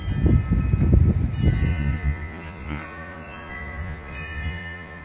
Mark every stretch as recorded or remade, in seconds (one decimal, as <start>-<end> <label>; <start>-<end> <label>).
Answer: 0.0-1.7 recorded; 1.7-5.0 remade